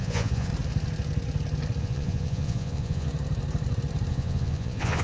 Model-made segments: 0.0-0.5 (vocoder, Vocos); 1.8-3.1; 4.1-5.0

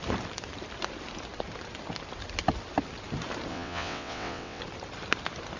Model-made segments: 3.5-4.6 (vocoder, WaveNeXt)

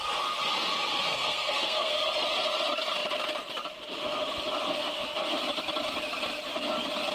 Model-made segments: 0.9-2.0 (codec, SNAC)

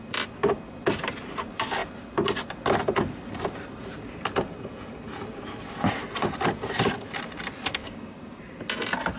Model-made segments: 7.8-8.4 (codec, DAC)

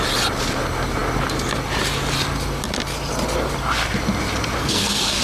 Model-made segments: 4.6-5.2 (codec, SNAC)